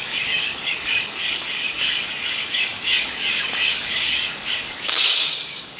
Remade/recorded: remade